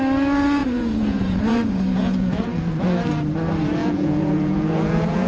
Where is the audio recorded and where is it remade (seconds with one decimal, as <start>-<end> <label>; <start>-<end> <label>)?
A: 0.0-0.6 recorded; 0.6-3.1 remade; 3.1-3.8 recorded; 3.8-5.3 remade